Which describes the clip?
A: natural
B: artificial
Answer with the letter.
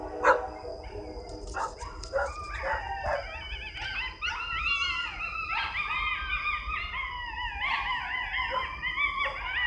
A